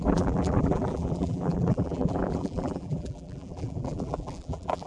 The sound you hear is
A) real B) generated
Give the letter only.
B